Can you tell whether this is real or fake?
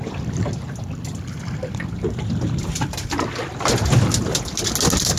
real